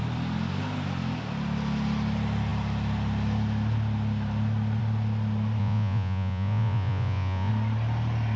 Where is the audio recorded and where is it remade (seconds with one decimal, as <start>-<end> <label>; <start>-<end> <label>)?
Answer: 0.0-5.6 recorded; 5.6-7.5 remade; 7.5-8.4 recorded